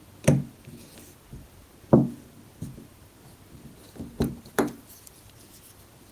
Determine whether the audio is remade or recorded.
remade